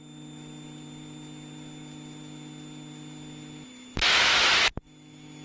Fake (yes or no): no